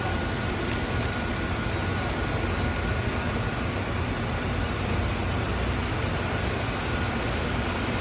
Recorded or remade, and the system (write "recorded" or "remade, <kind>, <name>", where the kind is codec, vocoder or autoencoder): recorded